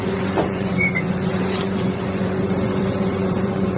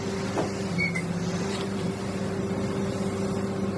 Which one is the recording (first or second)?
second